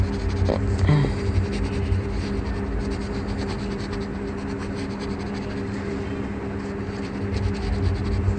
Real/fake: real